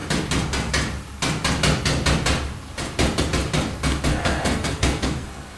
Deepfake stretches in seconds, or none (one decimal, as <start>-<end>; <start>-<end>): 4.1-5.6